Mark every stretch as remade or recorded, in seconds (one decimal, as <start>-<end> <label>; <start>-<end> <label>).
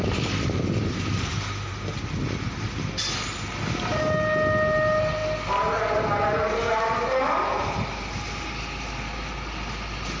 0.0-10.2 recorded